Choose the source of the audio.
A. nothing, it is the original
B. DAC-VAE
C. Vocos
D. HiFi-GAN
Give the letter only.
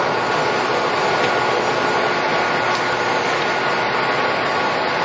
A